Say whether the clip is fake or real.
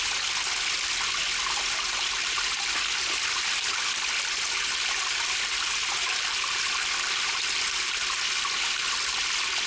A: real